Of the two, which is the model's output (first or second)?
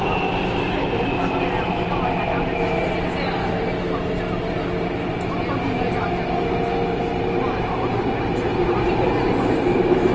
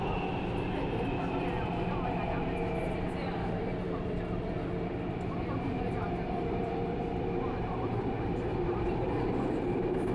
second